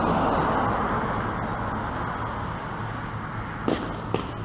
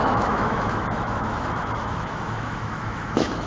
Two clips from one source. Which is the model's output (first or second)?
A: second